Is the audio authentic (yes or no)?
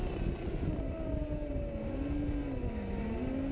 yes